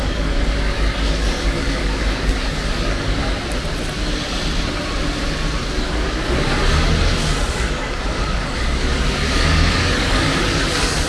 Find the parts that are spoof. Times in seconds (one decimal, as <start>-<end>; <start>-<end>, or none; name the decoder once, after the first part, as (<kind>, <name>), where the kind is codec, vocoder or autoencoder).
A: 0.0-3.2 (codec, DAC); 5.8-6.6; 7.5-11.1

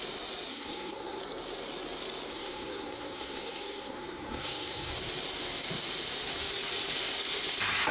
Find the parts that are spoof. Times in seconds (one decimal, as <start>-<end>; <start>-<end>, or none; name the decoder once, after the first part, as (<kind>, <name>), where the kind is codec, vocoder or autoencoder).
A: 0.5-1.2 (codec, SNAC); 2.3-4.9

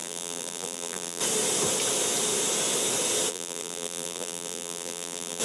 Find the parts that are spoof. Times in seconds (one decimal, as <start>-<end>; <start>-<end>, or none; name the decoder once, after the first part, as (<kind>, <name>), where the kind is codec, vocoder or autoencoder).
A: 0.0-1.2 (vocoder, BigVGAN v2); 3.3-5.4

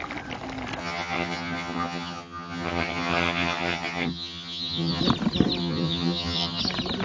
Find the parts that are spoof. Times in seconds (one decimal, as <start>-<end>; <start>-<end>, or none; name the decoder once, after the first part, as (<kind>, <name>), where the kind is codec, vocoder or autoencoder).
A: 0.8-5.0 (vocoder, HiFi-GAN); 5.6-6.6

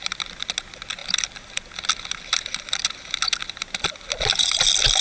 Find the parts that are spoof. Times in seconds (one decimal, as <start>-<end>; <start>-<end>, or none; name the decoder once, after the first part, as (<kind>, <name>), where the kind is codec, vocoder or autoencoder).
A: none

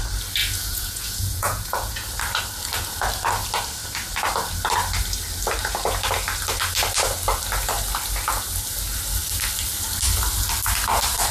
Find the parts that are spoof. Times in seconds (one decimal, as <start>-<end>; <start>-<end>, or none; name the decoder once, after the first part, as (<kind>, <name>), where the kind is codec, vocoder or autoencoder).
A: 0.4-2.1 (vocoder, Vocos)

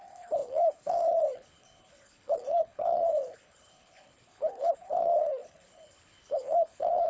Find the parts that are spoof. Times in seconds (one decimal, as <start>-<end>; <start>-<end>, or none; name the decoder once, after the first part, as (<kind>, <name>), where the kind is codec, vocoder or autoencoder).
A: 0.0-7.1 (codec, HILCodec)

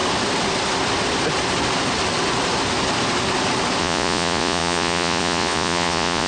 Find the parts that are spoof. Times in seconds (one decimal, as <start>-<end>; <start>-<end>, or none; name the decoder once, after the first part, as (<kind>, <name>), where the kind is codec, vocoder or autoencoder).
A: 3.8-6.3 (vocoder, Vocos)